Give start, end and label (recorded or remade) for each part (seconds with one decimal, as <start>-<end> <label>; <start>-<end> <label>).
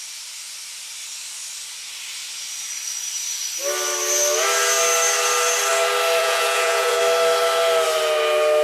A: 0.0-6.2 recorded; 6.2-7.0 remade; 7.0-8.6 recorded